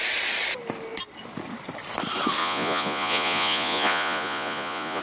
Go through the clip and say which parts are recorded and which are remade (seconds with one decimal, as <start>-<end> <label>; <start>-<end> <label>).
0.0-2.4 recorded; 2.4-5.0 remade